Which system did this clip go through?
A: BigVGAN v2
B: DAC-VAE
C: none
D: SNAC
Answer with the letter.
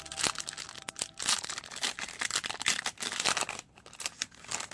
C